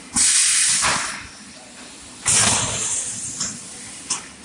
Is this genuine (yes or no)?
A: yes